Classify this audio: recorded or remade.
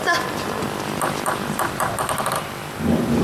recorded